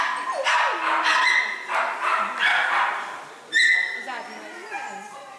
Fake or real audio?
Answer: real